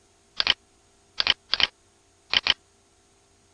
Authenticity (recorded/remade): recorded